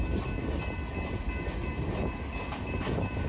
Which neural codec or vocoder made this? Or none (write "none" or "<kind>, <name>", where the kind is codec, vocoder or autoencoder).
none